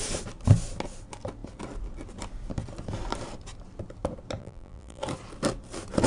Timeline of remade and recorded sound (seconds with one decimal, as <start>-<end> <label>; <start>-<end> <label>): 0.0-4.4 recorded; 4.4-5.0 remade; 5.0-6.1 recorded